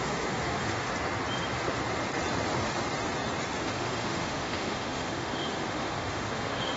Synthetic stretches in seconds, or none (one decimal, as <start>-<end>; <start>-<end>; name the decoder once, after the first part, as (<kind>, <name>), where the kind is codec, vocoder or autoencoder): 0.0-0.9 (autoencoder, DAC-VAE); 3.6-6.8